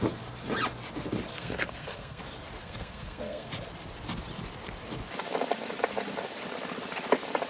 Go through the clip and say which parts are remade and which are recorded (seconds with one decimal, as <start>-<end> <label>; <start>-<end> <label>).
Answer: 0.0-1.3 recorded; 1.3-2.2 remade; 2.2-2.6 recorded; 2.6-3.5 remade; 3.5-7.5 recorded